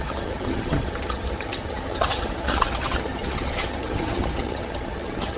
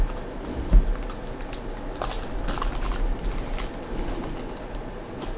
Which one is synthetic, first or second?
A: first